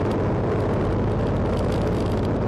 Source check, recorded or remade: recorded